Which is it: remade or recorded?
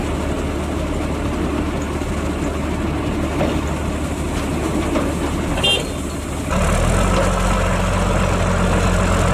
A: recorded